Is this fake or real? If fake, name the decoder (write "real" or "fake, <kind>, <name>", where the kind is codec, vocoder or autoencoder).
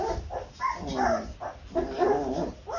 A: real